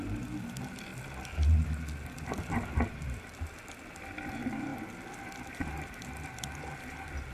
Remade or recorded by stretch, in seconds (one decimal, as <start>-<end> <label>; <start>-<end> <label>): 0.0-7.3 recorded